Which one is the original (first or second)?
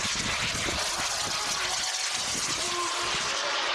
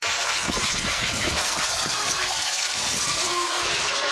first